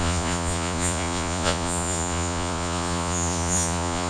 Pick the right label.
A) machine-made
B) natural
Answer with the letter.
A